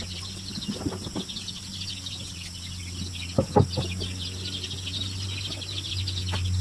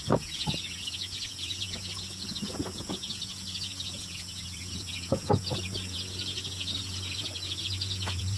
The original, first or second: first